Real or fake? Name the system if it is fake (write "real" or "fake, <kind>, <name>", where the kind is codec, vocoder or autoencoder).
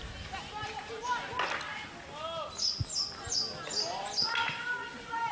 real